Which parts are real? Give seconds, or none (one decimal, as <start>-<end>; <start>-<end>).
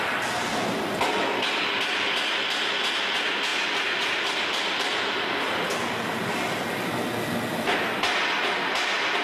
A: 0.0-9.2